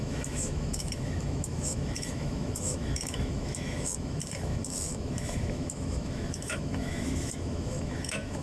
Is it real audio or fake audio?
fake